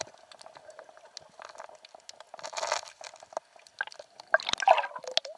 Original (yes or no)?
yes